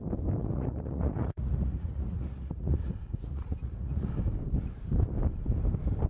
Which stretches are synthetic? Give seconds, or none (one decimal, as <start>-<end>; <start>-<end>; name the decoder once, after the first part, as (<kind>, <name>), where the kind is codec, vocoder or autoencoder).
0.4-4.1 (vocoder, Vocos)